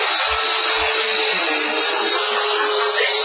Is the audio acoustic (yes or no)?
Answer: yes